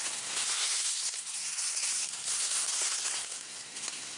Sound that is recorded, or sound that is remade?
remade